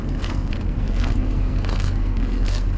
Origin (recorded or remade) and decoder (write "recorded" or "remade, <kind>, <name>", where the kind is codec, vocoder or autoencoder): remade, codec, SNAC